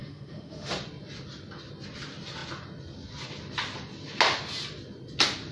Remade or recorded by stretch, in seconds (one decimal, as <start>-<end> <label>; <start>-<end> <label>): 0.0-0.7 remade; 0.7-5.5 recorded